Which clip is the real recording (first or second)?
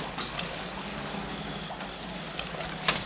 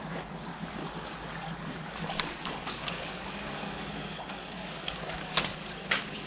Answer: first